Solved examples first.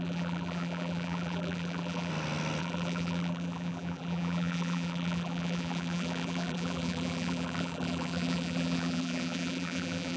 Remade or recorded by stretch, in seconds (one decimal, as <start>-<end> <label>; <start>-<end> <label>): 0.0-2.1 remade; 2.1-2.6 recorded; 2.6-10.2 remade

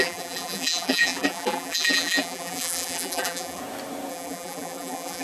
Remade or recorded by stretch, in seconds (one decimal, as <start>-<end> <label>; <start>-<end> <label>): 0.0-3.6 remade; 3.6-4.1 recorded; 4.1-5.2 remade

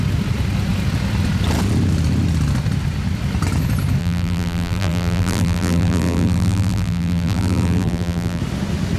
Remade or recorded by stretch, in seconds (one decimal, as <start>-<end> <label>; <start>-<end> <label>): 0.0-4.0 recorded; 4.0-8.4 remade; 8.4-9.0 recorded

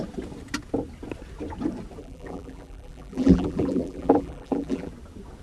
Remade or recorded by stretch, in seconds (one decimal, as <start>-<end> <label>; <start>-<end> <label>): 0.0-2.0 recorded; 2.0-4.9 remade; 4.9-5.4 recorded

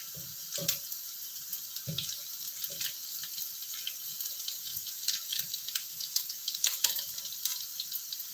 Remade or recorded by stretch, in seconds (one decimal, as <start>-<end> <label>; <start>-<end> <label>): 0.0-4.7 recorded; 4.7-7.0 remade; 7.0-8.3 recorded

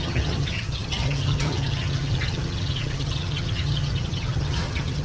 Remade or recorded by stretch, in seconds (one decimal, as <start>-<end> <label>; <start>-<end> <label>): 0.0-5.0 remade